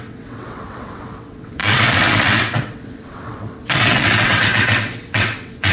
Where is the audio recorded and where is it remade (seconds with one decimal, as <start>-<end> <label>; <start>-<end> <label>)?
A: 0.0-5.7 remade